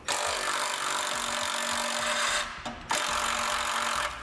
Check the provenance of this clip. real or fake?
real